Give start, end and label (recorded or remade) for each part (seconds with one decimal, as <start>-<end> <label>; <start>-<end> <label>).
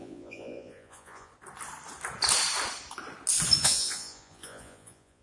0.0-1.3 remade; 1.3-3.6 recorded; 3.6-5.2 remade